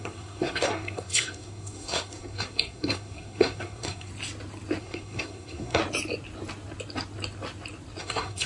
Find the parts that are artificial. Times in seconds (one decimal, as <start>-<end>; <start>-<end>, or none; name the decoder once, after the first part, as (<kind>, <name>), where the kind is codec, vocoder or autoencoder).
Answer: 0.0-4.1 (codec, SNAC); 4.8-5.8; 8.0-8.5